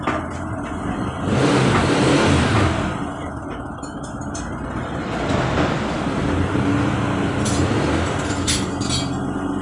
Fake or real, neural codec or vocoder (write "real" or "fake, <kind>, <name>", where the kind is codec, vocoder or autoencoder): real